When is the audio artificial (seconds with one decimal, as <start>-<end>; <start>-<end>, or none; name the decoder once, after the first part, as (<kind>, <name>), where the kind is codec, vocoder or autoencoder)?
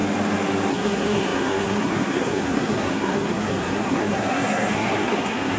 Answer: 0.7-5.6 (codec, SNAC)